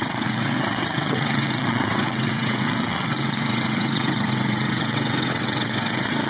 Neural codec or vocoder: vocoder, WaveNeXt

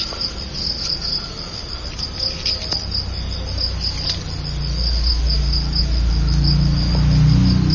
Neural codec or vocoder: none